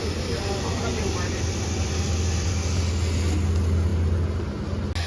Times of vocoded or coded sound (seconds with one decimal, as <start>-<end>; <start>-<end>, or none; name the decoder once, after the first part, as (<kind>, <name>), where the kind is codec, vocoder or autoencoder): 0.9-2.5 (vocoder, BigVGAN v2)